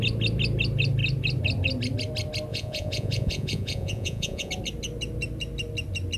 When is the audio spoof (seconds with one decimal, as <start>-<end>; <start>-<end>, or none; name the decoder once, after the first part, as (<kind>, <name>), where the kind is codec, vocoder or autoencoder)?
2.5-4.5 (vocoder, Vocos)